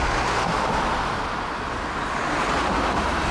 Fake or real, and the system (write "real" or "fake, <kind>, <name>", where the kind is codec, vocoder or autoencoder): real